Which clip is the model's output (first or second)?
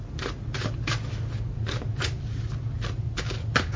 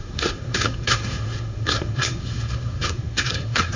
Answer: second